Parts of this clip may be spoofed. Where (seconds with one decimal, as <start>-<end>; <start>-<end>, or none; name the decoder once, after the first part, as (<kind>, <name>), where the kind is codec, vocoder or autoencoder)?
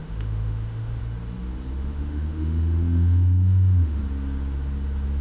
0.0-1.0 (autoencoder, DAC-VAE); 1.8-4.0